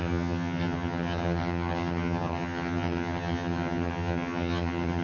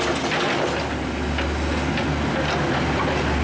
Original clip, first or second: second